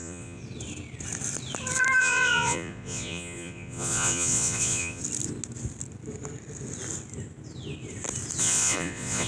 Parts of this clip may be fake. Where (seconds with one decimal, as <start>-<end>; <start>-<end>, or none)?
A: 0.0-0.4; 2.0-5.0; 8.4-9.3